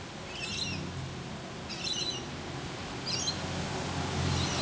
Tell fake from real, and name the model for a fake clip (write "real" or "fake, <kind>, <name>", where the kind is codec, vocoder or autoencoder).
real